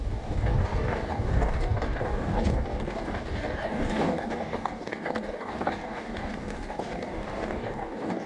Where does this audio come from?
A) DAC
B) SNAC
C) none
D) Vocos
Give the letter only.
A